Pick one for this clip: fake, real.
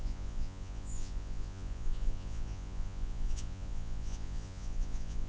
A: fake